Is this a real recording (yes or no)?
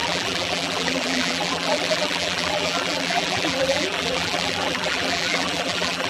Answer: no